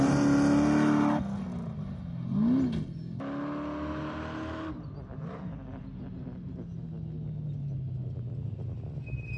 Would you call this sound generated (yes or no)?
no